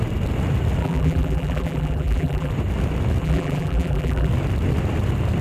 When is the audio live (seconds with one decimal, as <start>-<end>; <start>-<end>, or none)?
0.0-0.8; 2.5-3.2; 4.3-5.4